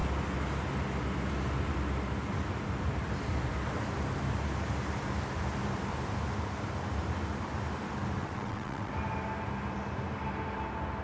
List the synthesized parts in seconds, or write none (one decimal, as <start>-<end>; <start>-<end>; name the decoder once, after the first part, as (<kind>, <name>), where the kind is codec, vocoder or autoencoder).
8.2-8.9 (vocoder, WaveNeXt)